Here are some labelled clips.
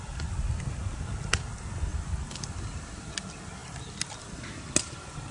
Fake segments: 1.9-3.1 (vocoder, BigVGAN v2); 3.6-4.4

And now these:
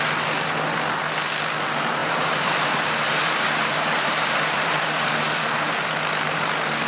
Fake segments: 2.0-5.1 (vocoder, BigVGAN v2)

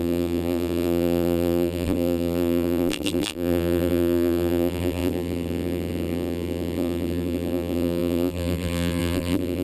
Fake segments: 0.0-9.6 (vocoder, BigVGAN v2)